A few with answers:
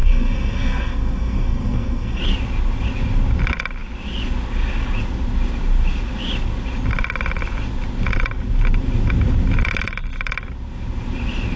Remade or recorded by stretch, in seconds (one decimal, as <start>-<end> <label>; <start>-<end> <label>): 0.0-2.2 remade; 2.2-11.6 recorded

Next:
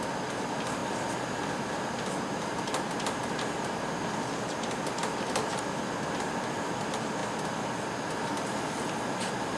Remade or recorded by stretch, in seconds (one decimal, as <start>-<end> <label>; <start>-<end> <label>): 0.0-9.6 recorded

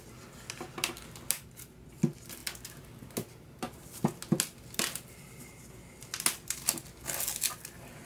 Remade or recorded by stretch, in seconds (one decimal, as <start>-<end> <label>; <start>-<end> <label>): 0.0-8.1 recorded